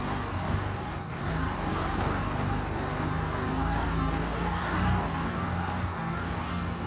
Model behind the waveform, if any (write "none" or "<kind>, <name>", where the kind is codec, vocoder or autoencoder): codec, DAC